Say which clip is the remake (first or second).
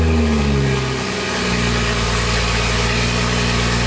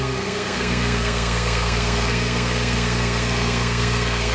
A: second